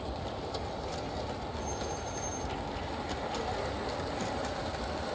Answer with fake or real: real